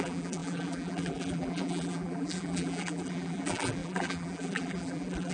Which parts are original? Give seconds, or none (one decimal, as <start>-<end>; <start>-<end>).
none